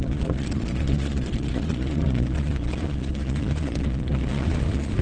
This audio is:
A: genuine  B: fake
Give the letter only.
B